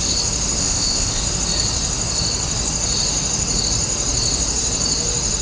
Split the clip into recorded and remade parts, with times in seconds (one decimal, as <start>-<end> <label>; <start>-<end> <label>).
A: 0.0-0.6 recorded; 0.6-1.2 remade; 1.2-5.4 recorded

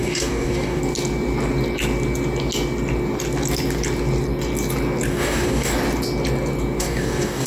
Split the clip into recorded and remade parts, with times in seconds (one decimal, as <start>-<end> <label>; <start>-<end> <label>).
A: 0.0-0.8 remade; 0.8-5.1 recorded; 5.1-5.7 remade; 5.7-6.8 recorded; 6.8-7.5 remade

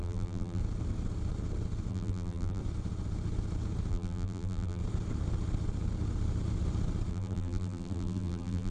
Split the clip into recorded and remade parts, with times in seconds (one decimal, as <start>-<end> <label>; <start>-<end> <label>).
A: 0.0-0.6 remade; 0.6-1.9 recorded; 1.9-2.6 remade; 2.6-3.9 recorded; 3.9-4.8 remade; 4.8-7.1 recorded; 7.1-8.7 remade

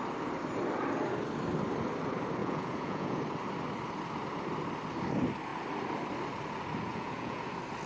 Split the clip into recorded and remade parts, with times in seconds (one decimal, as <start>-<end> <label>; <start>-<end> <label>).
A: 0.0-2.4 recorded; 2.4-3.2 remade; 3.2-6.9 recorded; 6.9-7.4 remade; 7.4-7.9 recorded

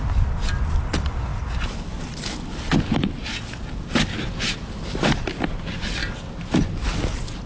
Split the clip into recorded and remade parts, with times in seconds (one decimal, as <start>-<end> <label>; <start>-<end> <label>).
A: 0.0-7.5 recorded

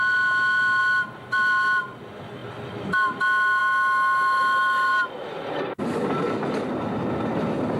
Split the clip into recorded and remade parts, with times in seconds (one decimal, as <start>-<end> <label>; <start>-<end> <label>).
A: 0.0-7.8 recorded

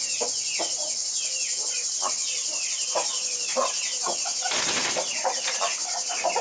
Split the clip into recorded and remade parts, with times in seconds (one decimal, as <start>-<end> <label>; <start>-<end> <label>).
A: 0.0-6.4 recorded

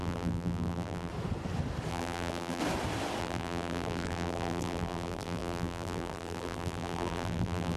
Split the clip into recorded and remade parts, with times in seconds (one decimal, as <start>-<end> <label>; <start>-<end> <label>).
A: 0.0-1.1 remade; 1.1-1.9 recorded; 1.9-2.6 remade; 2.6-3.2 recorded; 3.2-7.8 remade